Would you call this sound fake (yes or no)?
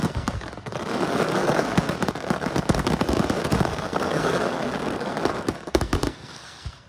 yes